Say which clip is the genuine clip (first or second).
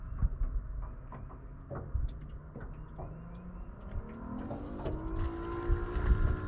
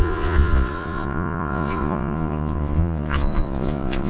first